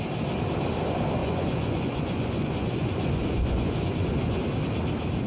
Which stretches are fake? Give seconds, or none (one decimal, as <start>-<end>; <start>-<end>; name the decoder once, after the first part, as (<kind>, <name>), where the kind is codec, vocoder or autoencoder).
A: 1.2-4.4 (vocoder, Vocos)